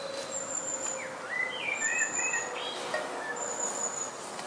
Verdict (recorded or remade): recorded